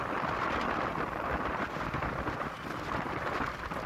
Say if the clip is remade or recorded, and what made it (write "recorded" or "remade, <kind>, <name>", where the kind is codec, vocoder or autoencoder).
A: recorded